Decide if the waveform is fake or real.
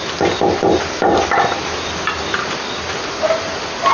real